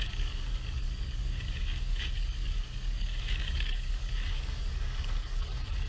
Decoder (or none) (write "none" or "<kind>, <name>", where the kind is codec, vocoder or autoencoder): codec, DAC